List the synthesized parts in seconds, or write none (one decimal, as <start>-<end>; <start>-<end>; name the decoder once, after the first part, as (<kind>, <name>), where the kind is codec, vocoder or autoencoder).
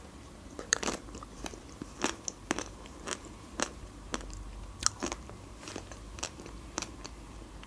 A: 0.0-4.1 (vocoder, BigVGAN v2); 4.9-7.7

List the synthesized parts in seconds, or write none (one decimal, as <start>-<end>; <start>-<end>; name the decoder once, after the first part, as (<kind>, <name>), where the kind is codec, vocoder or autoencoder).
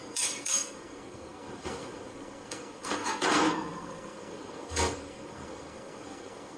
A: 0.0-6.6 (codec, SNAC)